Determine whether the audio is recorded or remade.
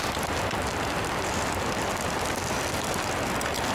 remade